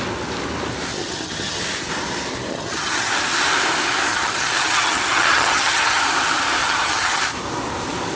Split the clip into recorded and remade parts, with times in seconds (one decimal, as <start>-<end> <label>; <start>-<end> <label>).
0.0-0.9 recorded; 0.9-1.6 remade; 1.6-2.5 recorded; 2.5-3.1 remade; 3.1-4.1 recorded; 4.1-6.0 remade; 6.0-6.6 recorded; 6.6-7.2 remade; 7.2-8.2 recorded